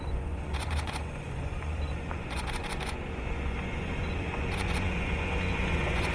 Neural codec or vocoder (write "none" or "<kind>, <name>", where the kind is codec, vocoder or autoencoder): vocoder, Vocos